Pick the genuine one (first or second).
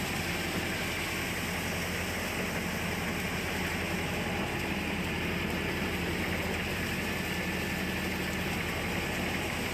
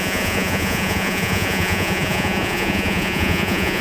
first